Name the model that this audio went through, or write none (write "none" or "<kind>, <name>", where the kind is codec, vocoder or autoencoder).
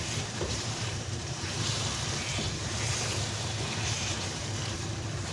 vocoder, BigVGAN v2